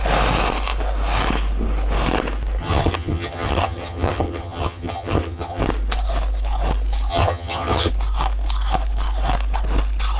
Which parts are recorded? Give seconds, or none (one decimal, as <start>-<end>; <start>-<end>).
0.0-2.6; 5.6-7.1; 7.9-10.2

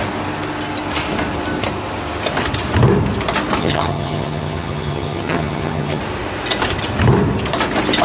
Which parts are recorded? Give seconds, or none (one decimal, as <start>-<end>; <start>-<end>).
0.0-3.6; 6.0-8.0

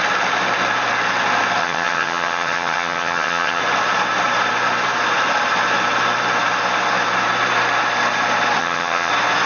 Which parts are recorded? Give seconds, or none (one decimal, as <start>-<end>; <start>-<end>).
0.0-1.6; 3.6-8.6; 9.1-9.5

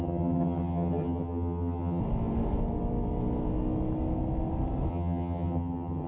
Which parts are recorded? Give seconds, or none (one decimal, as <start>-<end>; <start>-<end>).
2.0-4.9

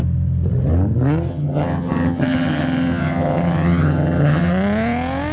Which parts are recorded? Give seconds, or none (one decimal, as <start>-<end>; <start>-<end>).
0.0-1.3; 4.5-5.3

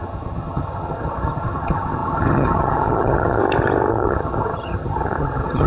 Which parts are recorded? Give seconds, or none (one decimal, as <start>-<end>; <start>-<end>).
3.4-3.9

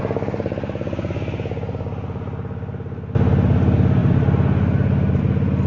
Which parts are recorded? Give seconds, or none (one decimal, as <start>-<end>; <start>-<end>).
0.0-5.7

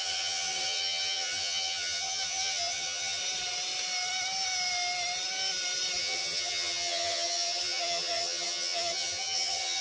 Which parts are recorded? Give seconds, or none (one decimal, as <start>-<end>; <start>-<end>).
3.2-6.0